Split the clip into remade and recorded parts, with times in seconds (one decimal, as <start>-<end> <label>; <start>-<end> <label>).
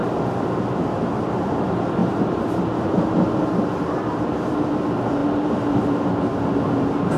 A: 0.0-2.0 remade; 2.0-4.0 recorded; 4.0-7.2 remade